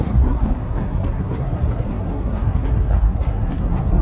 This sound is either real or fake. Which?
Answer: fake